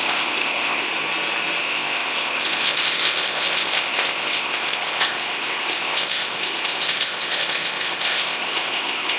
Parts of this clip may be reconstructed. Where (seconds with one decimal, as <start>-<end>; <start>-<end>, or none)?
0.0-0.9; 1.6-9.2